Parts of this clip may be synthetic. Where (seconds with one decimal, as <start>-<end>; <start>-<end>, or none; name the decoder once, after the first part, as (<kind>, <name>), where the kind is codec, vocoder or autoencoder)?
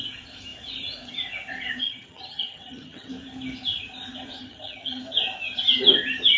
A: 1.8-3.1 (vocoder, HiFi-GAN); 4.4-5.0